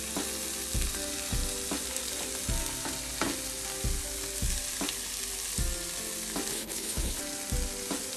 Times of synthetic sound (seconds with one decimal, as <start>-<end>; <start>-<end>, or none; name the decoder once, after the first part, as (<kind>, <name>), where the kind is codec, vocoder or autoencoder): 6.5-7.2 (codec, HILCodec)